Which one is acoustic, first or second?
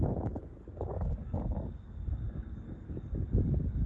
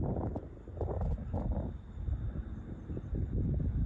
second